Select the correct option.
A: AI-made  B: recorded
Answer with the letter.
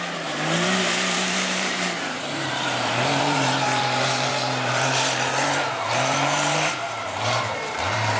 A